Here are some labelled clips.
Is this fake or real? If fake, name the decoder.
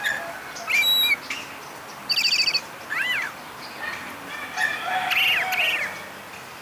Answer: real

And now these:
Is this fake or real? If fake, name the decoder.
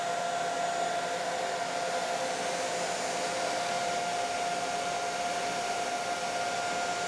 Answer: real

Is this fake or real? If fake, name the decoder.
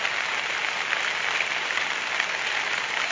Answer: real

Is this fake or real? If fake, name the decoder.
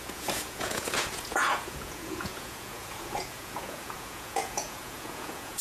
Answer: fake, vocoder, Vocos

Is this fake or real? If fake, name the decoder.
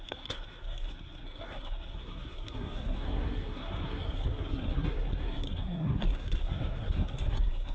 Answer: fake, codec, SNAC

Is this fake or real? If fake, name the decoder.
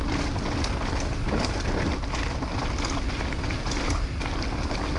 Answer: real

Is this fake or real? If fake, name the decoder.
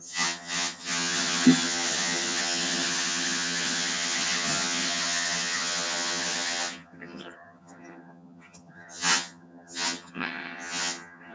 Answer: fake, vocoder, HiFi-GAN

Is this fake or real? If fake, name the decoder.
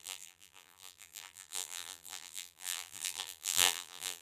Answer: fake, vocoder, BigVGAN v2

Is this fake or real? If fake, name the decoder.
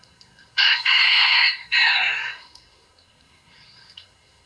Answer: fake, codec, SNAC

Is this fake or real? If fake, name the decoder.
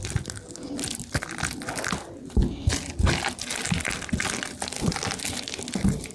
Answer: real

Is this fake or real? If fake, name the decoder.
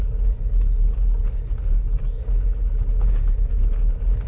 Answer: real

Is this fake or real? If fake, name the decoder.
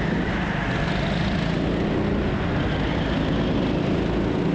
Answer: real